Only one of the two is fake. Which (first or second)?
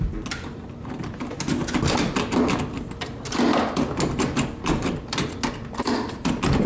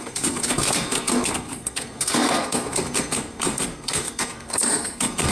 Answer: second